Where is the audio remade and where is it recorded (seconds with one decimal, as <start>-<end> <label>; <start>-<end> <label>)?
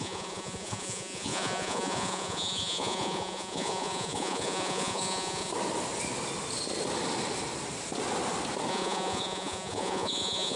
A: 0.0-5.5 remade; 5.5-8.7 recorded; 8.7-10.6 remade